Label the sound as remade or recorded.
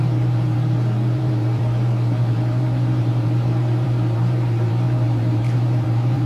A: remade